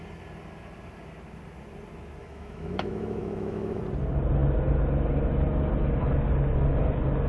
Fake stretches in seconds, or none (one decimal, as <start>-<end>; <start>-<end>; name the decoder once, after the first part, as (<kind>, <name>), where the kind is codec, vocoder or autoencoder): 2.2-3.8 (autoencoder, DAC-VAE)